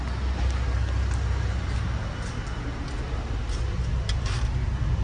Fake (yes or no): no